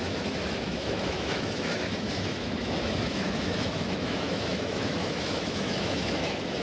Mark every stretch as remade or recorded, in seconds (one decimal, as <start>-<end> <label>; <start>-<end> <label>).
0.0-6.6 remade